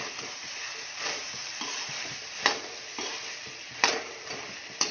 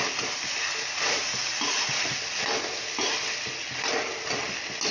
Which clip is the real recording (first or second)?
second